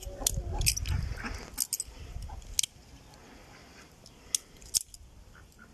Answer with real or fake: real